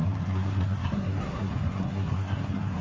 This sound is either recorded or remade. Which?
remade